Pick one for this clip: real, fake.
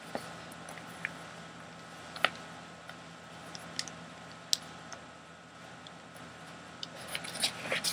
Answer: real